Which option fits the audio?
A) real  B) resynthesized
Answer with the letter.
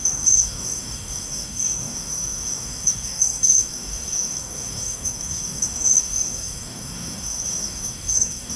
B